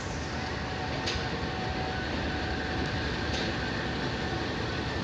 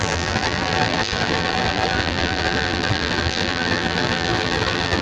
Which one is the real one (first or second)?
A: first